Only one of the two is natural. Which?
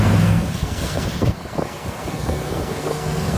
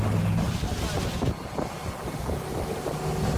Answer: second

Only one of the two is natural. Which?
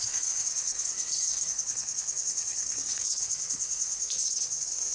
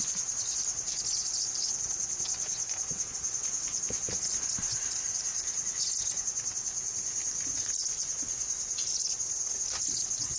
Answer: second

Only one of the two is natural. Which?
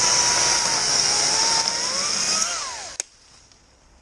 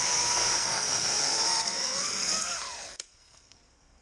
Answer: first